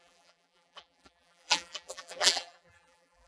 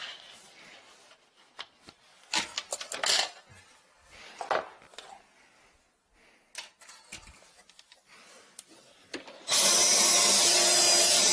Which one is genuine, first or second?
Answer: second